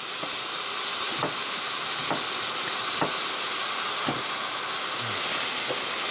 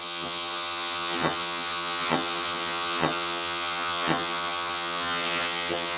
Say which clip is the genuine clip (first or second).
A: first